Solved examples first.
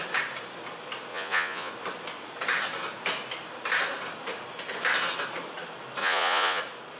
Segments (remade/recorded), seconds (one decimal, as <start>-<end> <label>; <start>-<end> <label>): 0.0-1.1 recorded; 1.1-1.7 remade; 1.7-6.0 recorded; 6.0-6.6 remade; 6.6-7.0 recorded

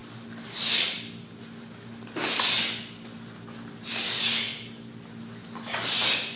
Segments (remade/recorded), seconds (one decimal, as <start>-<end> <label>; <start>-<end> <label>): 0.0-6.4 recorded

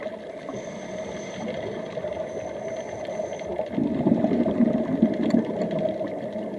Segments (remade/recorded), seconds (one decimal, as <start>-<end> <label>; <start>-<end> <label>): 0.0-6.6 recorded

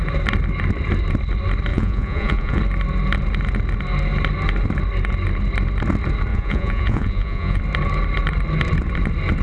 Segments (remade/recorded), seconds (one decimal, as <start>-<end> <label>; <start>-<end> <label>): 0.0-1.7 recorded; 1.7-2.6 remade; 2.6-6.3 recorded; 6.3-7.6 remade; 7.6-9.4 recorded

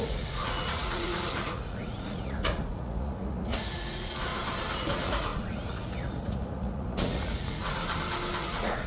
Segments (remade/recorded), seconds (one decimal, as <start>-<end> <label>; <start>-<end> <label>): 0.0-4.3 remade; 4.3-4.8 recorded; 4.8-7.8 remade; 7.8-8.4 recorded; 8.4-8.9 remade

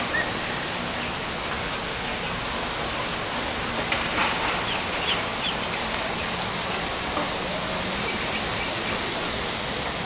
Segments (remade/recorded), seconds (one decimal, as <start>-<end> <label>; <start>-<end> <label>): 0.0-10.1 recorded